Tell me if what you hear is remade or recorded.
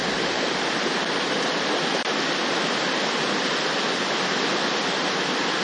recorded